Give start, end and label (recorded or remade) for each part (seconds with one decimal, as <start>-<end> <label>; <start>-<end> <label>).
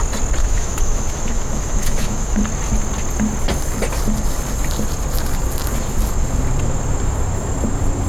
0.0-0.4 recorded; 0.4-2.4 remade; 2.4-8.1 recorded